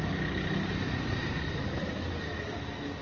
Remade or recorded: recorded